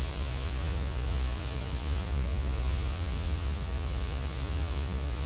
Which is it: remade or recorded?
remade